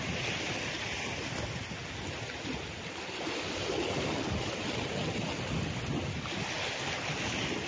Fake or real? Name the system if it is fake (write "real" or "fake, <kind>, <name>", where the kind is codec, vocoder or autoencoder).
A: real